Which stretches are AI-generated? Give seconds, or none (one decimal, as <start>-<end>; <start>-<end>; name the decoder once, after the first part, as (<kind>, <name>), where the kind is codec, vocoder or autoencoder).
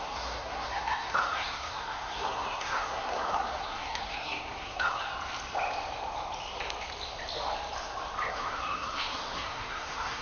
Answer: 0.0-5.1 (codec, SNAC); 8.3-10.2